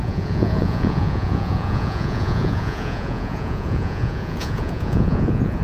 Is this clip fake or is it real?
fake